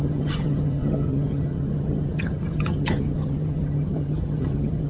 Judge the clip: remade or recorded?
remade